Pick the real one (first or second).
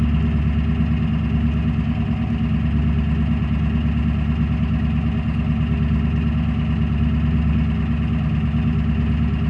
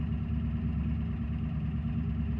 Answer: first